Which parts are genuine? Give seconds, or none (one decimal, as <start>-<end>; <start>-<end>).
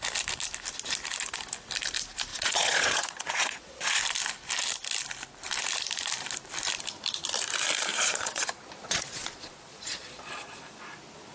0.0-2.3; 3.9-7.9; 10.7-11.3